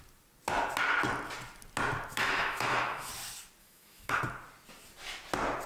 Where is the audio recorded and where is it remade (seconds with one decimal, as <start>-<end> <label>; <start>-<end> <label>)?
0.0-2.1 recorded; 2.1-3.1 remade; 3.1-3.6 recorded; 3.6-4.2 remade; 4.2-5.7 recorded